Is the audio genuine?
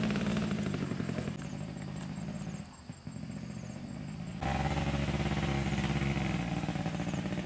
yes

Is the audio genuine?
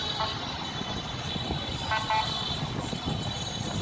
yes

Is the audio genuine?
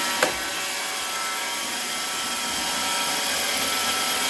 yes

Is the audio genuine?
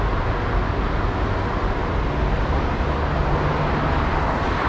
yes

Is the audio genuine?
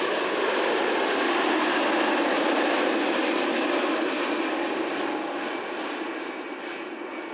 yes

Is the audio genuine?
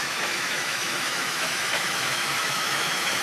no